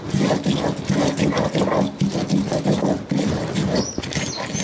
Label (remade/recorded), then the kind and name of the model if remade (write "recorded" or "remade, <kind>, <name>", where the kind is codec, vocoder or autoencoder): recorded